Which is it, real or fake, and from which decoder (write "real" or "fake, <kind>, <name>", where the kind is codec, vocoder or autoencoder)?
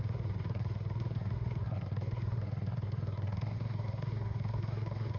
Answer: fake, codec, SNAC